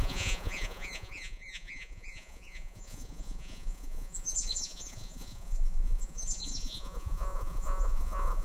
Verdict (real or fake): fake